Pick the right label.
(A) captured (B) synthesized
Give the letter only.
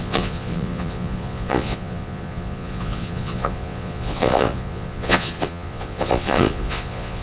B